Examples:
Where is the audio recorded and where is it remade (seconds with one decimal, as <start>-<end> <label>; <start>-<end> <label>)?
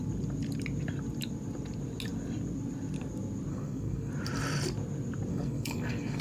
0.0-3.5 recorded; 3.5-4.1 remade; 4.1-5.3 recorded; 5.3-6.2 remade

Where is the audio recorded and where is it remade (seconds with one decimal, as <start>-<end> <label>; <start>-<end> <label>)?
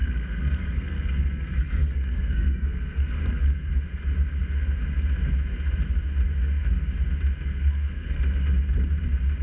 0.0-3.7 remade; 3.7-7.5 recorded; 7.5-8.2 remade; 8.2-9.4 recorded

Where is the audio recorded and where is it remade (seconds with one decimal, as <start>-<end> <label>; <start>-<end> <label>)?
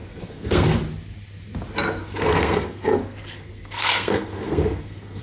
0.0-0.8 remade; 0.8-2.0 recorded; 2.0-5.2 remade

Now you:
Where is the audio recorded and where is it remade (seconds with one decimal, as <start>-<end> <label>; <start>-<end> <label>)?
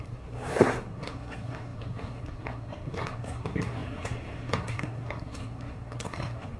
0.0-6.6 remade